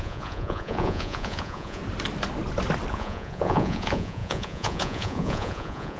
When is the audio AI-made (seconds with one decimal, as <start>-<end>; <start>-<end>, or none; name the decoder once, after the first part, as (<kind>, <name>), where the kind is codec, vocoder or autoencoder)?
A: 0.0-1.8 (vocoder, Vocos); 2.9-6.0